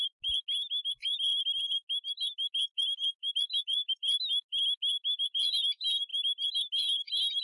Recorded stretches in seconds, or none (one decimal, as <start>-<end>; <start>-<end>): 0.0-7.4